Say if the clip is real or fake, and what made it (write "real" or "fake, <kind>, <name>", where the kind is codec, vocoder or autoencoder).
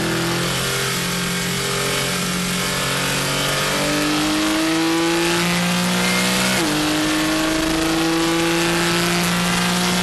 real